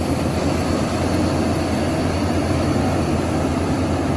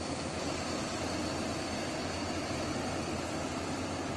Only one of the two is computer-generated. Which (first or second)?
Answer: second